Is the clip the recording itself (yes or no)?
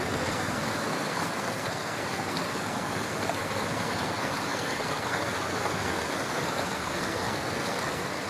no